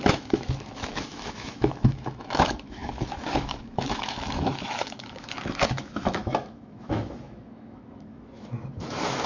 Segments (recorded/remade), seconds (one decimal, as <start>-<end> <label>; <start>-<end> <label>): 0.0-9.3 remade